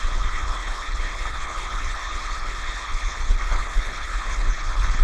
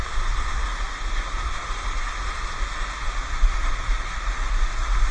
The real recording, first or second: second